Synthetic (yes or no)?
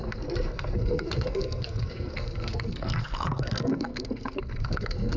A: yes